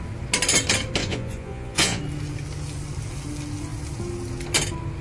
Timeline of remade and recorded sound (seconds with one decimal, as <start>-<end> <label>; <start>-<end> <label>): 0.0-1.0 recorded; 1.0-2.0 remade; 2.0-5.0 recorded